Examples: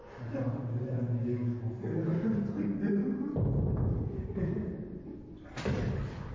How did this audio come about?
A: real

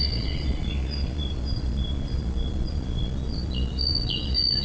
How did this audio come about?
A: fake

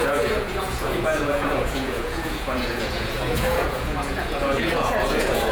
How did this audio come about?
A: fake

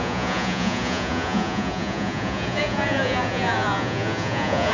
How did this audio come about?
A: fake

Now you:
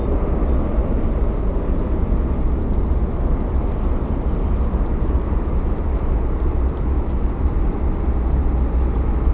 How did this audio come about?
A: real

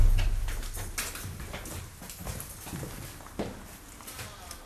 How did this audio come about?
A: real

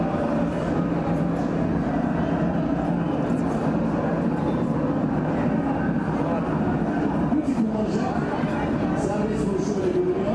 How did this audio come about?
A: real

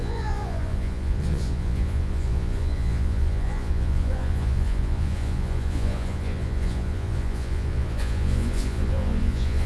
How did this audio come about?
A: fake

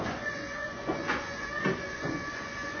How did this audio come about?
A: fake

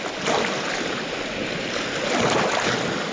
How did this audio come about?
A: real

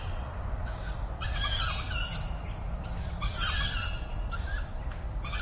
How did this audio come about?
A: real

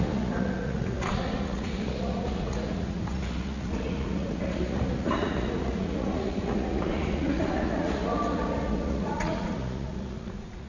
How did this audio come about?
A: fake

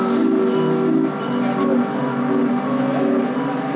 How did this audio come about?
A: real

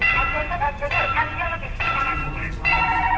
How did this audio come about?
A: fake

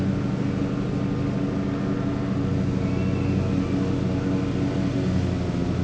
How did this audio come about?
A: real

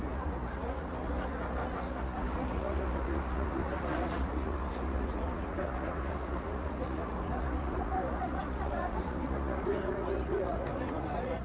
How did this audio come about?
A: fake